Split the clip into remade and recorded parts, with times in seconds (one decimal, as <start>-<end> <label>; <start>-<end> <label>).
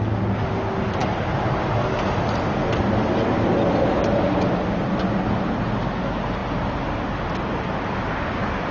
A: 0.0-8.7 recorded